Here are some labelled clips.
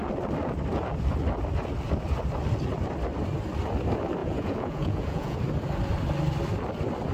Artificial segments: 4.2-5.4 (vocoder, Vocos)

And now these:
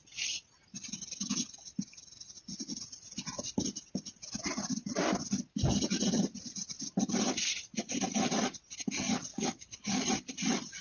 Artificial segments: 9.3-10.0 (codec, DAC)

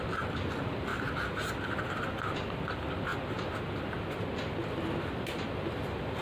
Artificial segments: none

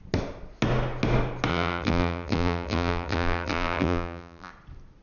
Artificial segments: 1.5-4.5 (vocoder, BigVGAN v2)

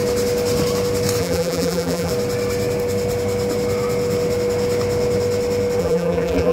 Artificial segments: 1.2-2.1 (vocoder, BigVGAN v2); 5.8-6.5